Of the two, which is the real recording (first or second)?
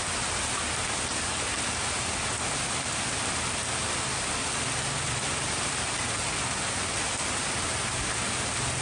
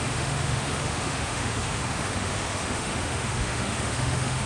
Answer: first